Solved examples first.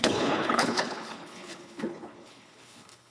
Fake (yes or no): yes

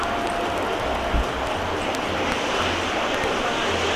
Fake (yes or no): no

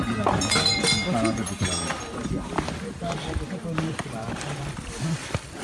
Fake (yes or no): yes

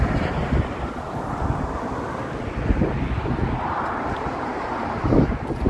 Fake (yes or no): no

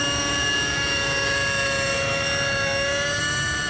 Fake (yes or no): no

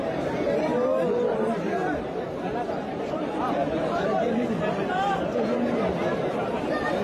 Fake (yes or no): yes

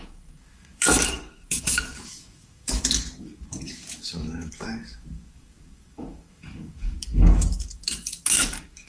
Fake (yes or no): yes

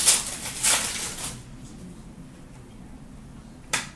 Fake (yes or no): no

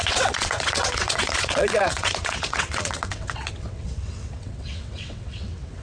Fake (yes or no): yes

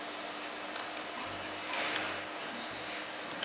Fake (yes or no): no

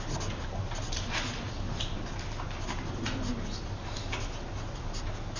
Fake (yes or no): no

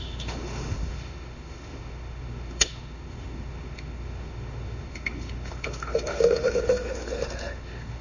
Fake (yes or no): yes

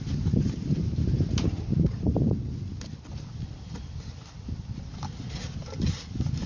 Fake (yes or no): no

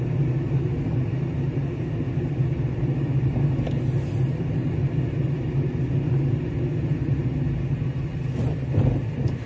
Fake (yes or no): no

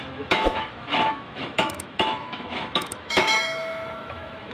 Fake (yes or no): yes